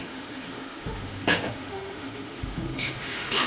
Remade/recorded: remade